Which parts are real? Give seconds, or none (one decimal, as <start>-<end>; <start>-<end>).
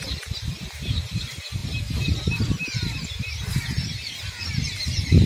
0.0-5.3